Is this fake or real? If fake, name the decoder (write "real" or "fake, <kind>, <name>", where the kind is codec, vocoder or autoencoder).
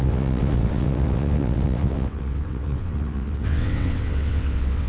fake, vocoder, WaveNeXt